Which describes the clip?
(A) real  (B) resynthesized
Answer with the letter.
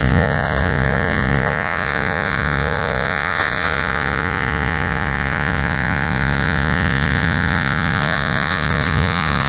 B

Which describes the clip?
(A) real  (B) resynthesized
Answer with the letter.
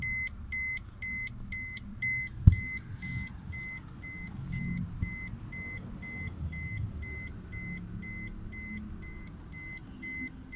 A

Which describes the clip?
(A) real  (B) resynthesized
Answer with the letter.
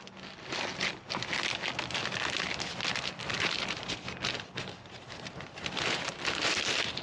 A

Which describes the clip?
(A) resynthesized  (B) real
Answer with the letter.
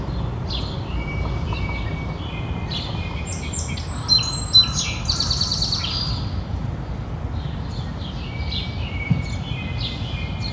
B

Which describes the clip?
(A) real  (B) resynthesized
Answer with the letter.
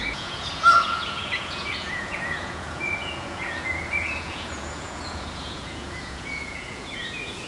B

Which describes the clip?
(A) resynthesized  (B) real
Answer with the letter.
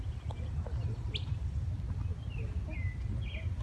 B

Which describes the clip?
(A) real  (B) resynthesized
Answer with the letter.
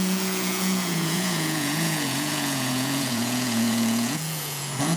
B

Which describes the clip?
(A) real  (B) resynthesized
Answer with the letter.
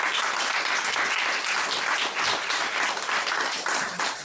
A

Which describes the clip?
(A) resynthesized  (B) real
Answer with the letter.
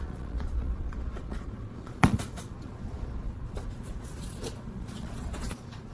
A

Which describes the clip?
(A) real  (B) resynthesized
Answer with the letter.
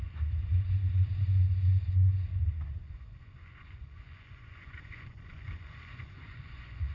B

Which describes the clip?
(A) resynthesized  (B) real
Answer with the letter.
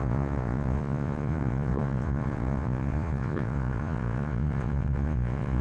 A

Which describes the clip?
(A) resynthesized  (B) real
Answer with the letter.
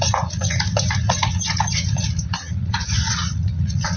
A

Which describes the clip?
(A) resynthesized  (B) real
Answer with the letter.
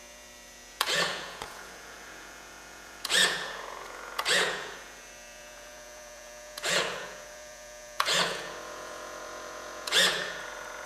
A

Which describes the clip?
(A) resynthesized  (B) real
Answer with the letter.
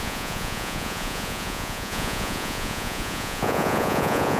A